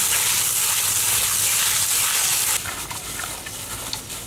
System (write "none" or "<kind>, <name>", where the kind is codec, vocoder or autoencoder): none